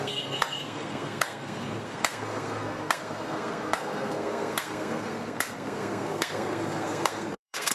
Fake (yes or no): yes